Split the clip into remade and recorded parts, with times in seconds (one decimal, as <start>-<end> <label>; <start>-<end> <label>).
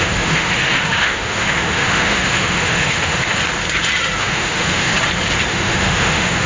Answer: 0.0-3.4 remade; 3.4-4.2 recorded; 4.2-4.9 remade; 4.9-5.5 recorded; 5.5-6.5 remade